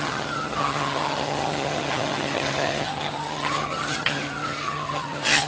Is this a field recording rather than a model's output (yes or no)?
no